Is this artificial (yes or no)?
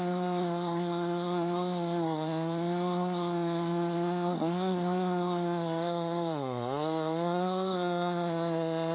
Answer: yes